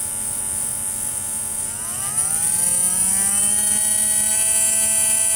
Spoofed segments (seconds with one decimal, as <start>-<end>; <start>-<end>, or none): none